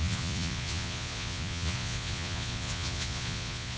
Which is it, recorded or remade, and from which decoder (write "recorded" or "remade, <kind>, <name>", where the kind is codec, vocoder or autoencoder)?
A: remade, vocoder, Vocos